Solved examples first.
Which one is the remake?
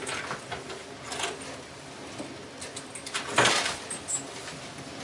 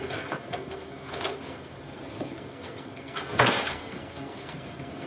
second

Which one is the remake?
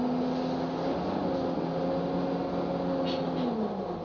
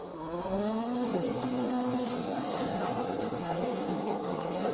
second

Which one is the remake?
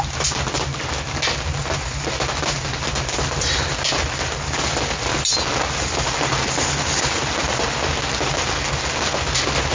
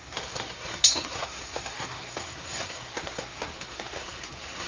second